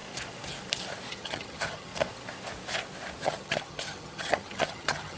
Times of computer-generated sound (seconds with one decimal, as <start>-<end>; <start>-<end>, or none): 1.1-1.9; 3.2-5.2